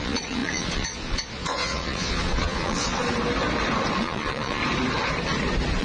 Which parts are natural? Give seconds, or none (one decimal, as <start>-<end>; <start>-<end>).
3.0-4.0; 4.6-5.8